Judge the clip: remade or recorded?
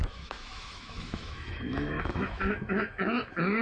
remade